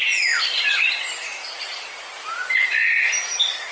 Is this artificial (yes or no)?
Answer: no